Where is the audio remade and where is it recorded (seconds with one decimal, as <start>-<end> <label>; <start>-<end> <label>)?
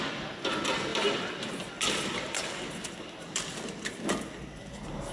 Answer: 0.0-5.1 recorded